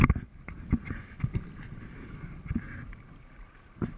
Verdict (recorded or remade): recorded